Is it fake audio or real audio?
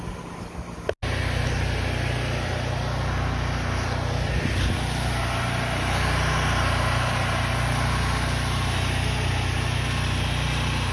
real